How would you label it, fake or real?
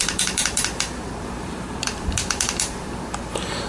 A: fake